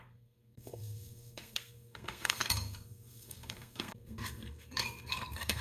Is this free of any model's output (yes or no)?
no